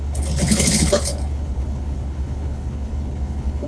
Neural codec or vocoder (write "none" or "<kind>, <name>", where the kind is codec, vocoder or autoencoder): codec, HILCodec